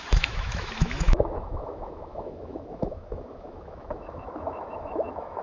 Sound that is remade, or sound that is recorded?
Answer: remade